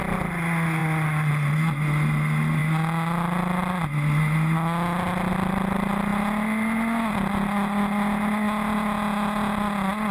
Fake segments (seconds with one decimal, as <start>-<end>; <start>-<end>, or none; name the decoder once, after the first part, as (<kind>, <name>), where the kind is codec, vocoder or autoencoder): none